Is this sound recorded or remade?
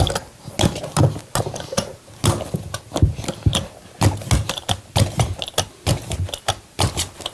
recorded